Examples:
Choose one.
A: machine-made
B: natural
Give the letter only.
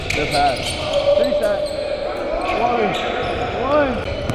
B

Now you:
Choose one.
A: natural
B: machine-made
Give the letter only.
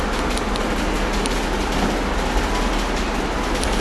A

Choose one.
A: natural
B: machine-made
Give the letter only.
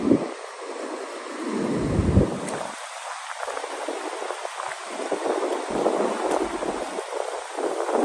A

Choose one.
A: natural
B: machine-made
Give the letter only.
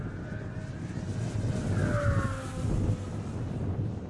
A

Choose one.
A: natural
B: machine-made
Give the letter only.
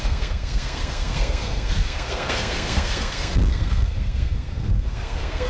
B